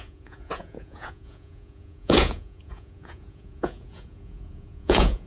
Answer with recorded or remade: remade